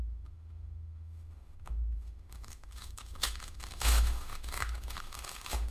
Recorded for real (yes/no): no